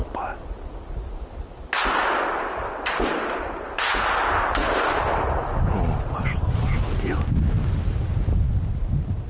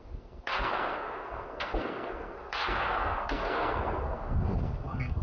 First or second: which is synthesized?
second